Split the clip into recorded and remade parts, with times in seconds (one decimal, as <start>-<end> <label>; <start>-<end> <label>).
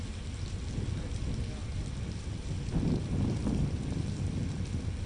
0.0-1.6 recorded; 1.6-4.5 remade; 4.5-5.1 recorded